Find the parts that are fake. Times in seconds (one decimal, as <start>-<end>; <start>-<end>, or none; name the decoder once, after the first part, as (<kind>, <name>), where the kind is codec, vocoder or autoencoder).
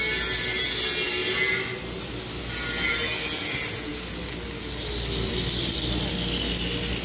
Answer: none